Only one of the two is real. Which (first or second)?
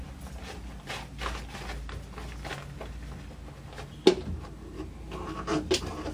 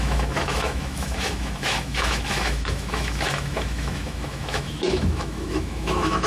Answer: first